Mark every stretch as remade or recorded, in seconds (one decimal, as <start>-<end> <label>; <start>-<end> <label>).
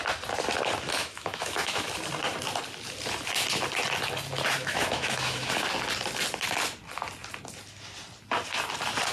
0.0-1.0 recorded; 1.0-1.9 remade; 1.9-4.6 recorded; 4.6-5.5 remade; 5.5-9.1 recorded